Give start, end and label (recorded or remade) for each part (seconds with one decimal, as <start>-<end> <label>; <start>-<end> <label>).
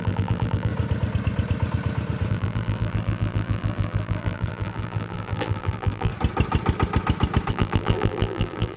0.0-0.7 remade; 0.7-2.3 recorded; 2.3-6.1 remade; 6.1-7.5 recorded; 7.5-8.8 remade